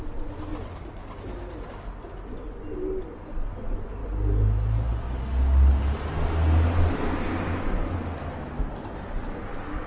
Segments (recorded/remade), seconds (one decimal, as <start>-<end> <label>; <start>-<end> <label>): 0.0-9.9 recorded